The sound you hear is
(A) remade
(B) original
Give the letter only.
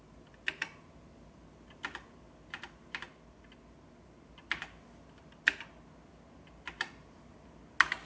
B